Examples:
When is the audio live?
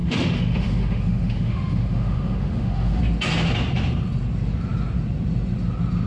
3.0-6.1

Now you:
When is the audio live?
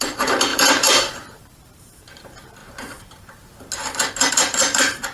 2.6-4.3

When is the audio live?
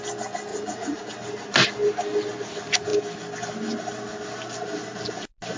0.0-0.5; 1.0-5.6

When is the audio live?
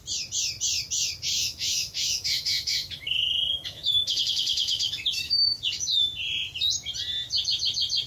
0.0-1.4; 5.6-8.1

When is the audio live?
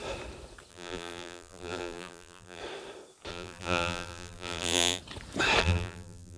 0.0-0.7; 2.6-3.3; 5.0-5.6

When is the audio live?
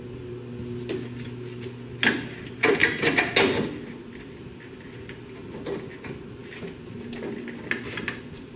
0.0-8.6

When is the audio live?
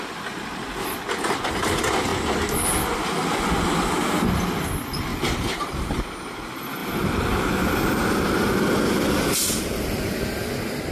0.0-5.1; 6.0-6.8; 8.2-10.9